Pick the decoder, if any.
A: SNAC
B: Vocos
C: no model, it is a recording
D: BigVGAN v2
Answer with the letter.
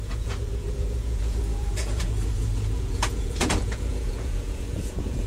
B